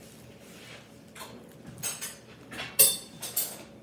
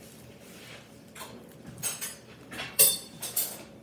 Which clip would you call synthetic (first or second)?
second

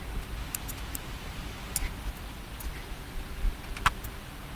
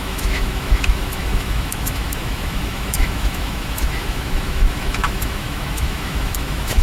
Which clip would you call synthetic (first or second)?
second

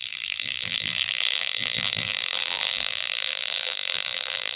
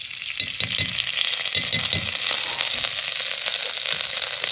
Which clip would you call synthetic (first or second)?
first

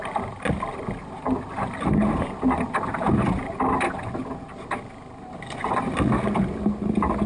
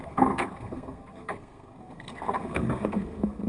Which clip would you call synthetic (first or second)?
second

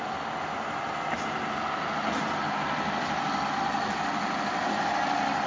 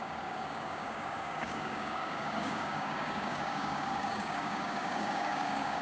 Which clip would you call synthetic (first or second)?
second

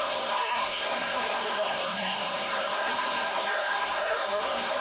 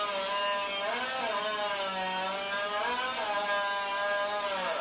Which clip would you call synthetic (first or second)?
first